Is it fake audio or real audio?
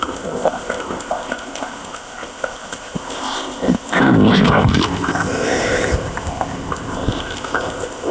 fake